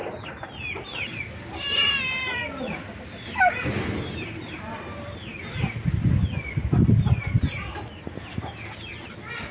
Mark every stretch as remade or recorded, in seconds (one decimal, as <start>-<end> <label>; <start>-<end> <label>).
0.0-9.5 recorded